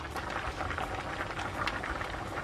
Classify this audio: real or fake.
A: real